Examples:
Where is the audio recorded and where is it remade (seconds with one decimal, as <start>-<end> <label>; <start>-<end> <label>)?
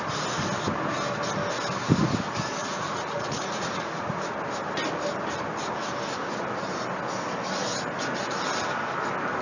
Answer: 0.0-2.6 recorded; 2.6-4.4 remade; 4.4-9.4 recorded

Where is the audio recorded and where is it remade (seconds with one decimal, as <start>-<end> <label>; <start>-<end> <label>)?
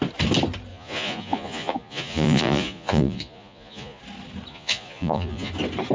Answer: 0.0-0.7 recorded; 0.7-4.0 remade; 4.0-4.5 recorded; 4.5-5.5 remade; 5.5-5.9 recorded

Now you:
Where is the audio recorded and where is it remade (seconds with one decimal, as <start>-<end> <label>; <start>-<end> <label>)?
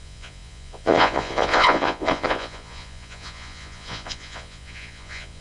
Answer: 0.0-5.4 remade